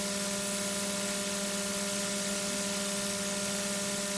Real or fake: real